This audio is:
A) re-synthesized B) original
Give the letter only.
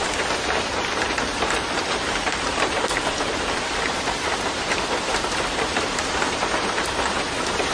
A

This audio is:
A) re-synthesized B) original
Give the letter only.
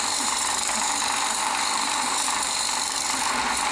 A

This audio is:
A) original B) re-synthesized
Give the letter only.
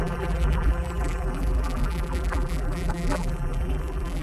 B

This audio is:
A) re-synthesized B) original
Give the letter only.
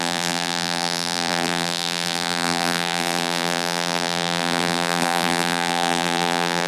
A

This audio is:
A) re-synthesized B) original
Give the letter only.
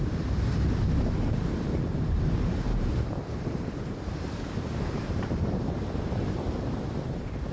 A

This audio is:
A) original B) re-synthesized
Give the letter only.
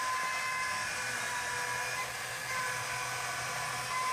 A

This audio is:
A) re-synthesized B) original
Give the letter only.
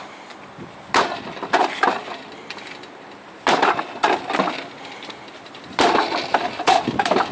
A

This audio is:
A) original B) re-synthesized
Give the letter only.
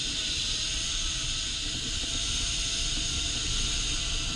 A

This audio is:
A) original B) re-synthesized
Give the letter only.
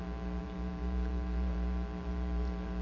B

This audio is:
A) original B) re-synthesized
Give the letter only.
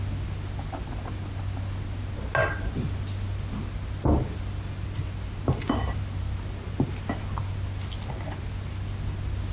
A